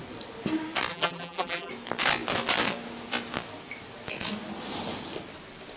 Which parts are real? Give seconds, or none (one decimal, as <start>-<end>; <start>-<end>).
0.0-0.9; 1.7-5.8